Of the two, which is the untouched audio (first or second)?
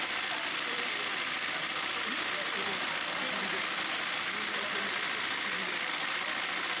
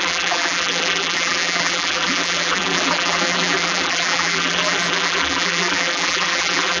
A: first